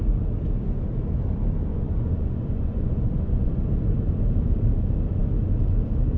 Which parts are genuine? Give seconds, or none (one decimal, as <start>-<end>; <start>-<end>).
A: 0.0-1.7; 3.6-6.2